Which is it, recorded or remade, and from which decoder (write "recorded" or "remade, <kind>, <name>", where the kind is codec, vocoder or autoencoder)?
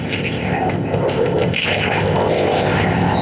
remade, codec, ZipCodec